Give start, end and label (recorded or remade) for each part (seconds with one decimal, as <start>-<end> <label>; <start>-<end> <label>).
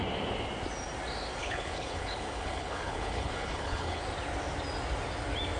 0.0-1.4 recorded; 1.4-4.0 remade; 4.0-5.6 recorded